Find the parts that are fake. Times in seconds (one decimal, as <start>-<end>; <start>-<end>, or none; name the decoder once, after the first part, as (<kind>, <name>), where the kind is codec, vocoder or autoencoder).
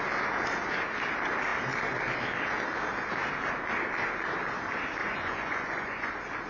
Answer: 5.0-6.1 (vocoder, Vocos)